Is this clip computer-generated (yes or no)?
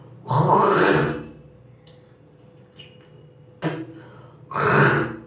no